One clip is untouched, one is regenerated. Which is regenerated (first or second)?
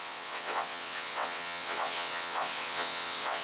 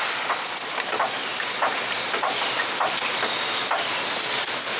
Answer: first